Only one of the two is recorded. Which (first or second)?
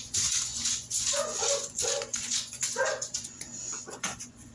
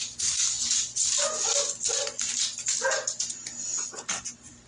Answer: second